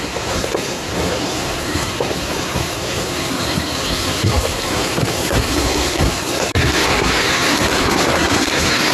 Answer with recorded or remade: remade